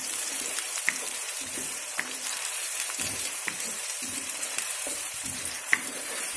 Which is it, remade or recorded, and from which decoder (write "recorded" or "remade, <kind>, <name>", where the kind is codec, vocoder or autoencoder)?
remade, vocoder, BigVGAN v2